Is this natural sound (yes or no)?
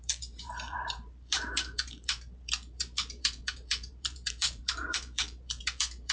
no